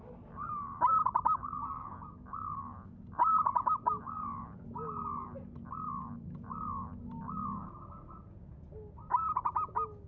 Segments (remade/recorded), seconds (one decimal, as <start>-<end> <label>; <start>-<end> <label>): 0.0-3.3 recorded; 3.3-4.0 remade; 4.0-5.1 recorded; 5.1-7.0 remade; 7.0-7.6 recorded; 7.6-8.4 remade; 8.4-10.1 recorded